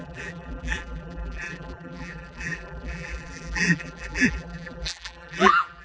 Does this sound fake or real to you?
fake